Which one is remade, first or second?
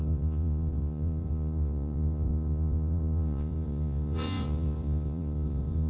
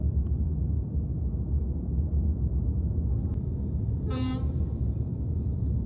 first